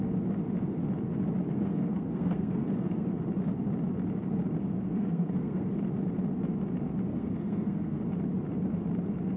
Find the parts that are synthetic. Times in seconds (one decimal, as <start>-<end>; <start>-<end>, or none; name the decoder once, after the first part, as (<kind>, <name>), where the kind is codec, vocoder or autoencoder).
1.5-3.1 (codec, SNAC); 4.6-5.7; 7.1-8.0